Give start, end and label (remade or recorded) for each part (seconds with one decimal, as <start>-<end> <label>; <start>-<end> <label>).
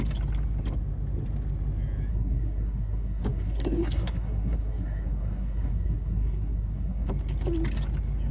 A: 0.0-2.1 recorded; 2.1-7.1 remade; 7.1-8.3 recorded